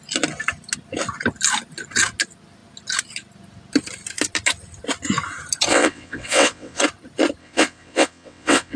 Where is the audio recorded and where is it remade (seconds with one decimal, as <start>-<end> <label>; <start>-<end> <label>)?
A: 0.0-5.7 recorded; 5.7-6.8 remade; 6.8-7.4 recorded; 7.4-8.8 remade